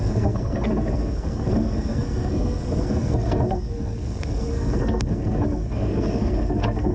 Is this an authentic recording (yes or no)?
no